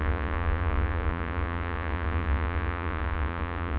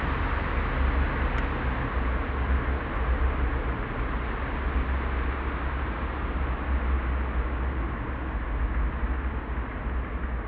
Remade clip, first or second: first